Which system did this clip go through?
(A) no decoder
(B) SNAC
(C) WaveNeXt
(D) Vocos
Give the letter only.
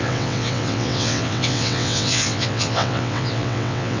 C